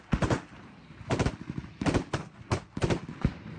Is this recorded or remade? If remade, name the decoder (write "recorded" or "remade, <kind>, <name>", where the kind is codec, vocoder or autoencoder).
recorded